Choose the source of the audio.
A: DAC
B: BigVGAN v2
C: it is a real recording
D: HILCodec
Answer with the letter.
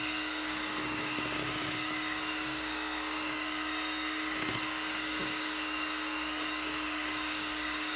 A